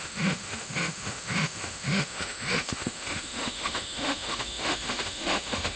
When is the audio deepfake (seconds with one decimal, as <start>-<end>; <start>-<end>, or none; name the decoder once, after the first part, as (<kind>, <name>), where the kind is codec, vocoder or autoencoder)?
0.0-5.8 (autoencoder, DAC-VAE)